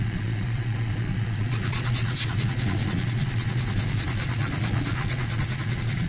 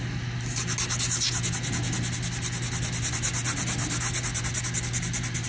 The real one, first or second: second